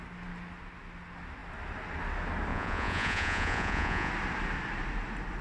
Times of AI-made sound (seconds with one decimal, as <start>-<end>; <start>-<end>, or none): 2.5-4.1

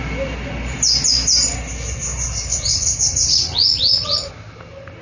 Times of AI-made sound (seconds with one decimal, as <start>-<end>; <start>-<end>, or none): 2.5-4.3

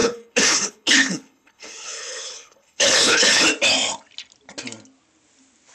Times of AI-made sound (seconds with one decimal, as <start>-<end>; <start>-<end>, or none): 0.0-3.4

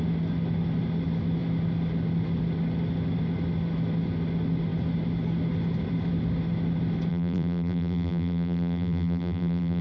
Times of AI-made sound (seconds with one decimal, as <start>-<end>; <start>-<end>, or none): 7.1-9.8

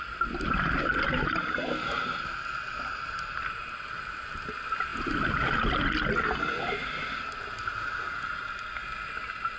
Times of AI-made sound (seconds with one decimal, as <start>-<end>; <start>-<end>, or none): 0.9-2.0

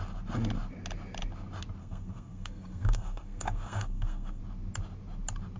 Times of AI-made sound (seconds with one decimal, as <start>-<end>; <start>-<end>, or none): 1.8-4.4

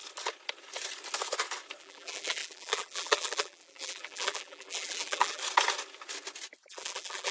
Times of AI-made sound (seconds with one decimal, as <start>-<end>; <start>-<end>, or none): 1.8-5.4; 6.7-7.3